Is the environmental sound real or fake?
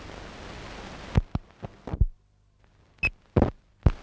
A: real